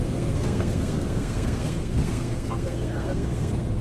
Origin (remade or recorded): remade